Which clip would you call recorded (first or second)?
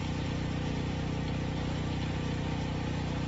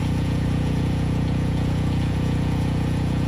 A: first